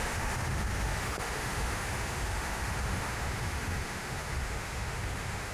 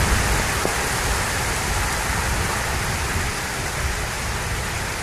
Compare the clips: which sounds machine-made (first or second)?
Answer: first